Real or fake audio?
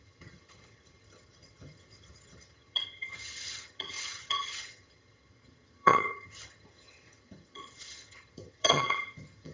fake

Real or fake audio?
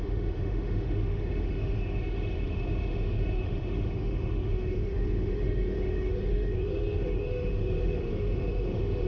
fake